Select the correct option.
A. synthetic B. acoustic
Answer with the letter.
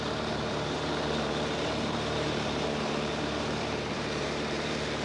A